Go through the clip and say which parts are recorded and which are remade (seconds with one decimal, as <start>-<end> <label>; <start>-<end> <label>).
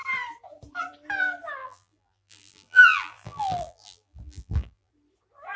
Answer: 0.0-1.6 recorded; 1.6-4.9 remade; 4.9-5.6 recorded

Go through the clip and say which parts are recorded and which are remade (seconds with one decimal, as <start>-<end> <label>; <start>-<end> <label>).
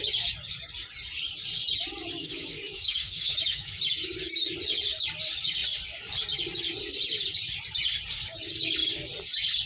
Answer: 0.0-2.2 recorded; 2.2-3.8 remade; 3.8-9.7 recorded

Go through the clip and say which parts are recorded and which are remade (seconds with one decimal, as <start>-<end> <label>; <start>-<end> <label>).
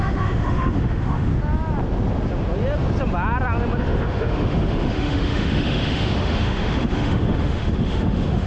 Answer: 0.0-1.3 remade; 1.3-3.8 recorded; 3.8-8.5 remade